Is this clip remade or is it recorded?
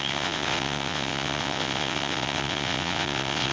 remade